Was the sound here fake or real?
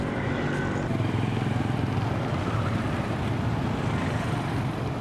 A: real